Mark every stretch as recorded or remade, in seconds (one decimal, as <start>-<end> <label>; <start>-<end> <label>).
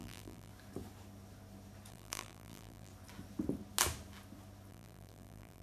0.0-0.5 remade; 0.5-1.9 recorded; 1.9-2.9 remade; 2.9-4.7 recorded; 4.7-5.6 remade